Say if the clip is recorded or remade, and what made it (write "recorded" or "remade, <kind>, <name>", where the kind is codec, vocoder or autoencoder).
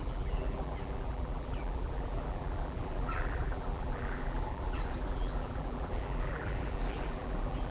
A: remade, vocoder, BigVGAN v2